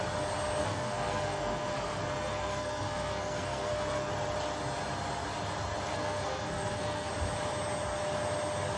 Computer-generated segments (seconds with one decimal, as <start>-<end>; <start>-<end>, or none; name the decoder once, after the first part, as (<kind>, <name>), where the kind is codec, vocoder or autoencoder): 0.6-4.1 (codec, SNAC); 5.9-7.1